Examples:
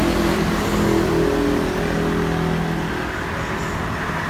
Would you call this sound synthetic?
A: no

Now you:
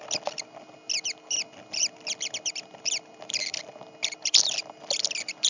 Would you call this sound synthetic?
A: no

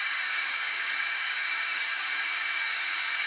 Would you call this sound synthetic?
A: yes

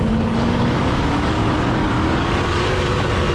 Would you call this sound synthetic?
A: yes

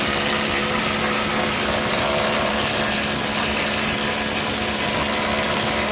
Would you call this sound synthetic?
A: no